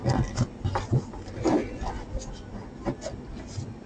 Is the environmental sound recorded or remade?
recorded